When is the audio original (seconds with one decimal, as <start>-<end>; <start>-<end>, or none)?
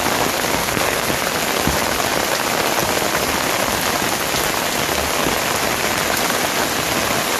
0.0-0.6; 1.1-7.4